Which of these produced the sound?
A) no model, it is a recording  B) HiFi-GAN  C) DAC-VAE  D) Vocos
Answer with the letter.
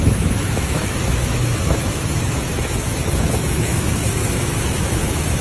C